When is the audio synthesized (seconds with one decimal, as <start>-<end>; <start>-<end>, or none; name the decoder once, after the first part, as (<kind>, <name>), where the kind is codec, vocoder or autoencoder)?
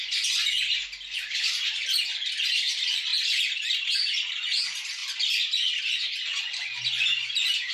5.0-5.8 (vocoder, BigVGAN v2)